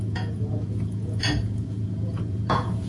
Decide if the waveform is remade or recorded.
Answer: remade